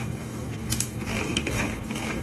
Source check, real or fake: fake